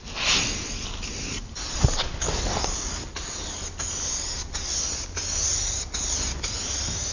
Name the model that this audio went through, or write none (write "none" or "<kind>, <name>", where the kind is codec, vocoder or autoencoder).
none